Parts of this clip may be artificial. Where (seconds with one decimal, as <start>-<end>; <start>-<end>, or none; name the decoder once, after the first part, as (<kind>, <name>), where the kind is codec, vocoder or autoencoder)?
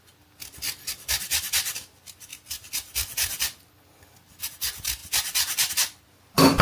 none